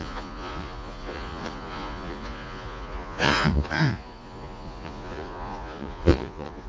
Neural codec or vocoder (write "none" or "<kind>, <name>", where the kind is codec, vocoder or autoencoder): vocoder, Vocos